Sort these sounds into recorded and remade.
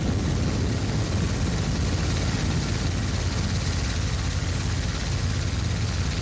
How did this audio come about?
recorded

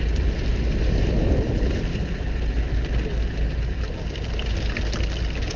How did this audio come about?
recorded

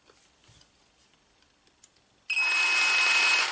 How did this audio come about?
recorded